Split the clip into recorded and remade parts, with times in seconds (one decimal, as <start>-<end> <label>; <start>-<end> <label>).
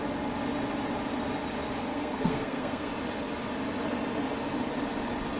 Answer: 0.0-1.9 recorded; 1.9-2.9 remade; 2.9-5.4 recorded